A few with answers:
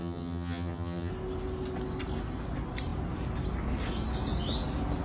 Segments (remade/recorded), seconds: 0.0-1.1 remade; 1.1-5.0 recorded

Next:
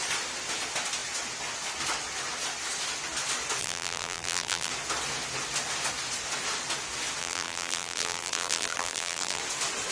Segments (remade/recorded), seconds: 0.0-3.6 recorded; 3.6-4.7 remade; 4.7-7.2 recorded; 7.2-9.4 remade; 9.4-9.9 recorded

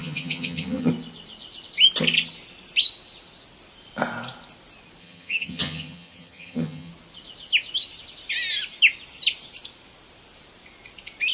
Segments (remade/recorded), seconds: 0.0-0.9 remade; 0.9-5.0 recorded; 5.0-6.9 remade; 6.9-11.3 recorded

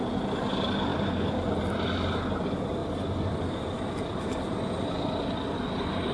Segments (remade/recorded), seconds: 0.0-2.8 recorded; 2.8-4.5 remade; 4.5-6.1 recorded

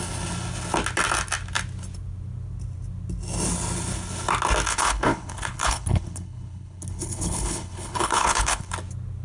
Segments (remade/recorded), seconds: 0.0-4.7 recorded; 4.7-8.7 remade; 8.7-9.2 recorded

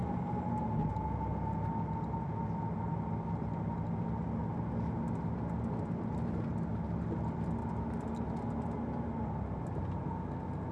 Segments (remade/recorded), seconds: 0.0-10.7 recorded

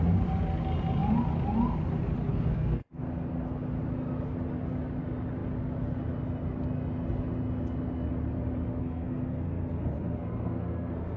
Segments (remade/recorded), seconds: 0.0-2.3 recorded; 2.3-3.0 remade; 3.0-8.8 recorded; 8.8-11.2 remade